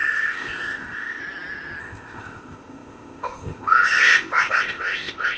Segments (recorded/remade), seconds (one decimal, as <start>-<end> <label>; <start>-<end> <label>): 0.0-1.2 remade; 1.2-1.8 recorded; 1.8-5.4 remade